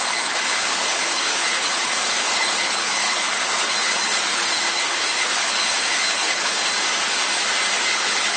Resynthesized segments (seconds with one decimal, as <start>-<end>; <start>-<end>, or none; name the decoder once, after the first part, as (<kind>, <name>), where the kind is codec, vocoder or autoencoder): 0.0-6.6 (codec, HILCodec); 7.8-8.4